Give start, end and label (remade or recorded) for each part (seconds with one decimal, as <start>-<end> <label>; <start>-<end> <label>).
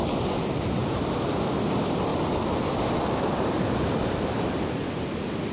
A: 0.0-0.8 recorded; 0.8-1.4 remade; 1.4-2.1 recorded; 2.1-4.9 remade; 4.9-5.5 recorded